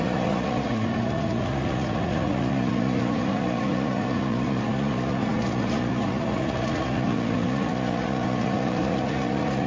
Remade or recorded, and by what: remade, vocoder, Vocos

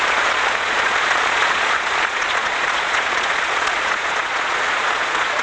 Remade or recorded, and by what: remade, vocoder, Vocos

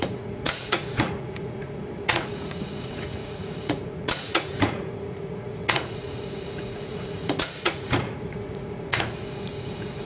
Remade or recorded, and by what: remade, vocoder, Vocos